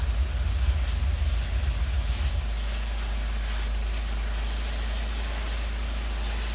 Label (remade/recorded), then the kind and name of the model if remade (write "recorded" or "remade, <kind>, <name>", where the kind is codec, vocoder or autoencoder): recorded